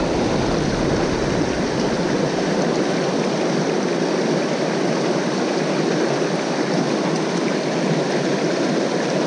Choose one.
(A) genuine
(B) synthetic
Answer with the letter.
A